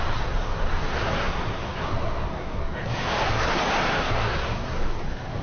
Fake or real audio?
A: fake